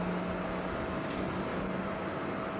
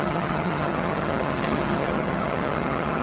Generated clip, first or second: second